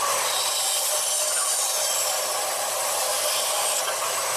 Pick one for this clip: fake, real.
real